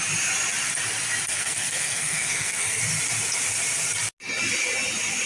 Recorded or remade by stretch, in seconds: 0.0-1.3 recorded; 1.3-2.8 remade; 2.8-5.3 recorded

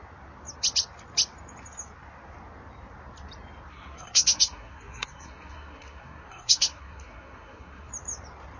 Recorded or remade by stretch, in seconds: 0.0-3.7 recorded; 3.7-7.9 remade; 7.9-8.6 recorded